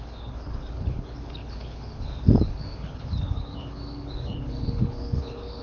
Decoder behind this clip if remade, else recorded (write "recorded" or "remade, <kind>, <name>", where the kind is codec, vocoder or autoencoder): remade, codec, HILCodec